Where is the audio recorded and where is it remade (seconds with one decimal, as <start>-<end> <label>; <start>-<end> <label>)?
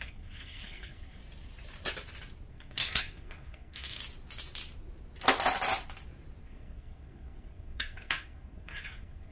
0.0-1.2 remade; 1.2-2.5 recorded; 2.5-4.0 remade; 4.0-6.4 recorded; 6.4-9.3 remade